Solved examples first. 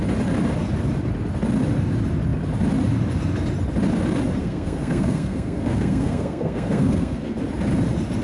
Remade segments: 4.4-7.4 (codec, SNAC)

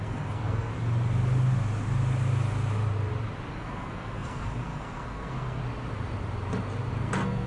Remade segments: 0.0-0.7 (codec, SNAC); 3.5-5.6; 6.9-7.5

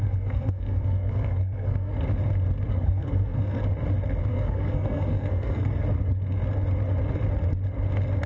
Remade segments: 0.0-1.9 (codec, SNAC); 2.7-3.6; 4.3-5.8

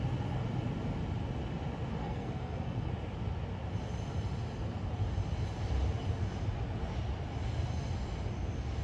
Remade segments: 2.0-2.9 (codec, SNAC)

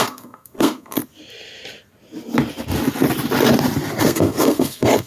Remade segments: 0.0-1.0 (codec, SNAC); 4.0-5.1